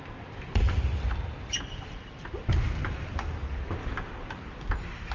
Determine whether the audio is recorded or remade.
recorded